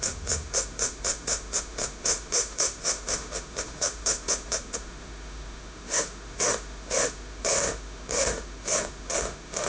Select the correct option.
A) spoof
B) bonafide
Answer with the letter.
A